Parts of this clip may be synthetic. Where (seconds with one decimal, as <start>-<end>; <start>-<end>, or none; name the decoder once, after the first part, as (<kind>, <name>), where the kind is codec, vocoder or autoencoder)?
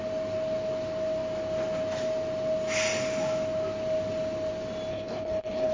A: 4.9-5.7 (codec, HILCodec)